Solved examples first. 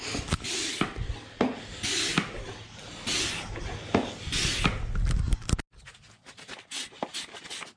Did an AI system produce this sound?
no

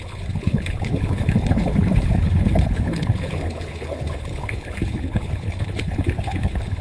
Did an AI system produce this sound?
yes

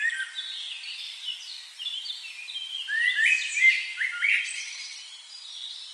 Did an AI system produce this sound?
no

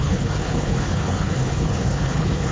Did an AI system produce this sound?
yes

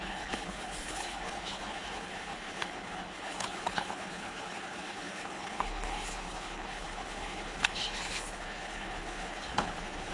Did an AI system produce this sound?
yes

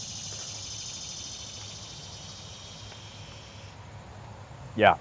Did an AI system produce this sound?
no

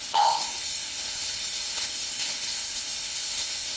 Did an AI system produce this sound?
yes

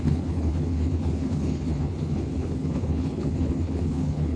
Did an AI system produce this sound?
yes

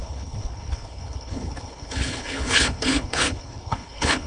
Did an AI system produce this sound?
yes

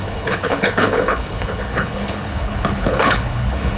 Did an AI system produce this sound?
yes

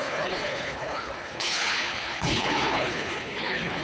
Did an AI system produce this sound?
yes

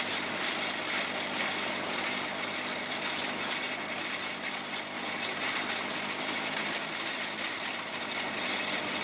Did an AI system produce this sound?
no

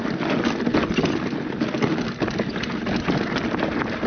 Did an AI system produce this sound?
no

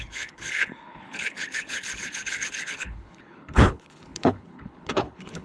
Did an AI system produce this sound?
yes